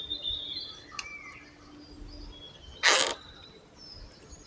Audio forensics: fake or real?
real